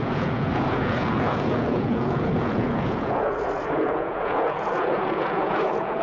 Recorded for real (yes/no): no